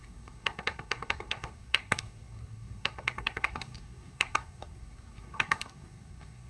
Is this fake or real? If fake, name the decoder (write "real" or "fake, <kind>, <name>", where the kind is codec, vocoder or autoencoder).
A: fake, codec, SNAC